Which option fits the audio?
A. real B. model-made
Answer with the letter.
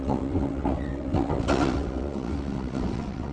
B